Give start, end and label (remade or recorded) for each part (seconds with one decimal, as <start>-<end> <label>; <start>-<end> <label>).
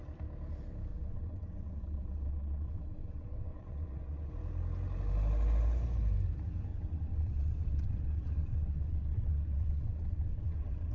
0.0-0.9 recorded; 0.9-4.3 remade; 4.3-6.7 recorded; 6.7-10.9 remade